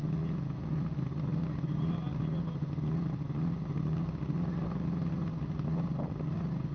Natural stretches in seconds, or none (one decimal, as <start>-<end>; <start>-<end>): 0.8-6.7